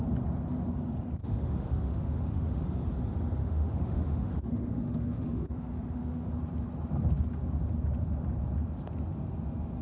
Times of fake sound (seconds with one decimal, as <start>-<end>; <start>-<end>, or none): 1.2-2.6; 3.4-6.3

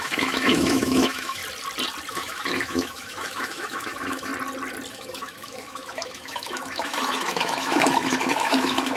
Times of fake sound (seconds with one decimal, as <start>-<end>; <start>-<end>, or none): 0.0-1.4; 2.1-4.3; 4.9-9.0

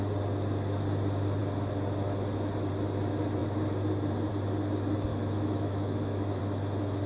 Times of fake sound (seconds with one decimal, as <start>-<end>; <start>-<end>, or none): 5.1-6.4

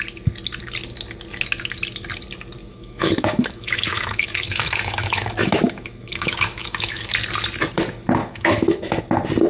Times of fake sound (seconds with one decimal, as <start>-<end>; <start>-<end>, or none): 2.7-7.1; 8.2-9.0

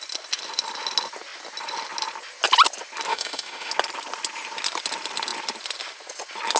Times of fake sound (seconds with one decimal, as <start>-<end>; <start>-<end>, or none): 3.1-3.7